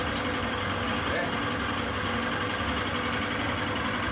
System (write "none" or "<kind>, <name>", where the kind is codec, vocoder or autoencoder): none